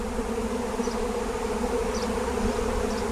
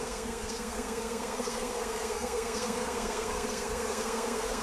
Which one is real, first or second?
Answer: first